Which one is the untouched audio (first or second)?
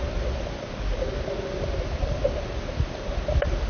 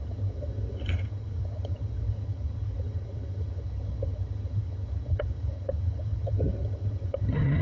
first